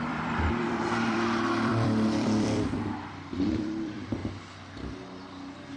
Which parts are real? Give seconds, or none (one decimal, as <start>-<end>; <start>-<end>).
4.2-5.8